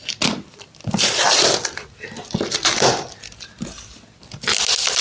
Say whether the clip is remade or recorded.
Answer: recorded